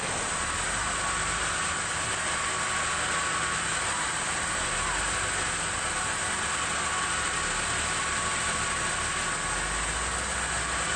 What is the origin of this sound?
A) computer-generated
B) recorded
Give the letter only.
B